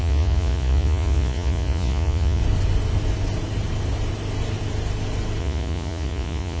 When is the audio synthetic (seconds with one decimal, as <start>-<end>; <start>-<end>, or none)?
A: 0.0-2.4; 5.4-6.6